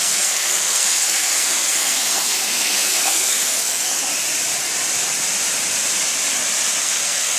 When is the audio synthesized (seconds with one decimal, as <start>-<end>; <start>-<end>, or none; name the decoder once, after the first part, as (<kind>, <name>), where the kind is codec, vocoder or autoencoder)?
0.0-4.0 (codec, SNAC); 6.8-7.4